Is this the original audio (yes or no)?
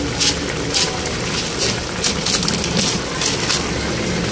yes